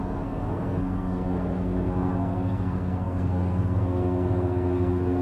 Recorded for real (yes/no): no